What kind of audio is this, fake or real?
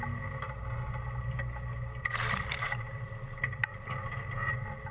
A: real